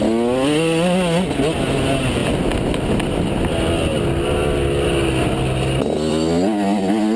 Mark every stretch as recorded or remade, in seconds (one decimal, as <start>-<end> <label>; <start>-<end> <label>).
0.0-7.2 recorded